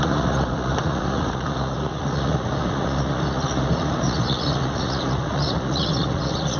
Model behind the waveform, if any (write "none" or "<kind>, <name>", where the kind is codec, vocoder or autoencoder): vocoder, Vocos